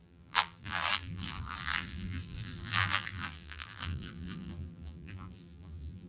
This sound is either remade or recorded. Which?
remade